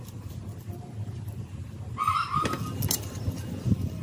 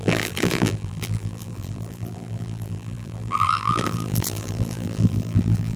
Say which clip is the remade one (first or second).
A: second